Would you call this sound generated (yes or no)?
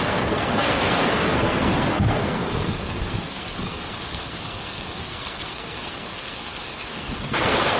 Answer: yes